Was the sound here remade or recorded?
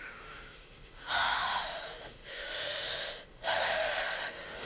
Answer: remade